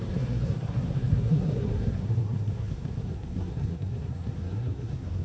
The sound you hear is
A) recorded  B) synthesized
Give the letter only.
B